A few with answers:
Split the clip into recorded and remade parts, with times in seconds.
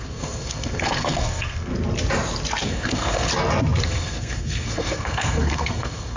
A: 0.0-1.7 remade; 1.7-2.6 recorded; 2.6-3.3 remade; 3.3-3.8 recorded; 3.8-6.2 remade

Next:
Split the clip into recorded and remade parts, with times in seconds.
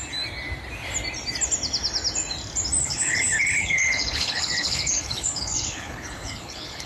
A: 0.0-2.8 recorded; 2.8-6.9 remade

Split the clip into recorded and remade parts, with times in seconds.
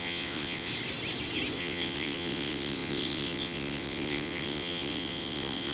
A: 0.0-0.7 remade; 0.7-1.6 recorded; 1.6-5.7 remade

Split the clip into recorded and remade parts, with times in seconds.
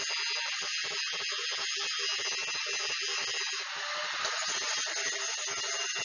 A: 0.0-6.0 recorded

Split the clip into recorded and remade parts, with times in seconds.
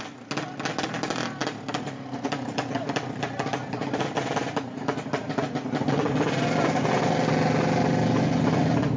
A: 0.0-1.4 recorded; 1.4-6.1 remade; 6.1-9.0 recorded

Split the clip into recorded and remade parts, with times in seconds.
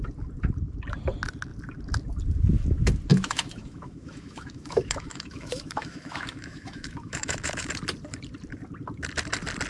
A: 0.0-3.1 recorded; 3.1-7.7 remade; 7.7-9.7 recorded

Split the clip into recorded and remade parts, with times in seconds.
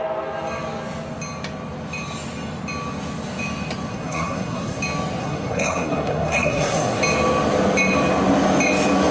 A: 0.0-3.9 recorded; 3.9-4.8 remade; 4.8-5.2 recorded; 5.2-7.0 remade; 7.0-9.1 recorded